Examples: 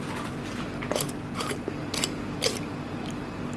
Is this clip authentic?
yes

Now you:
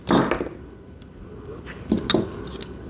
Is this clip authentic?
yes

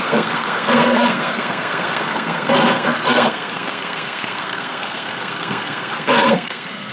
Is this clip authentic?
no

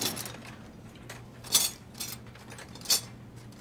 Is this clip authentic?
yes